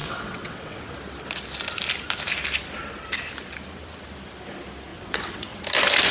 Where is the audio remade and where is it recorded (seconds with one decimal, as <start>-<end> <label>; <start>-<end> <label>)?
0.0-0.8 remade; 0.8-4.9 recorded; 4.9-5.6 remade; 5.6-6.1 recorded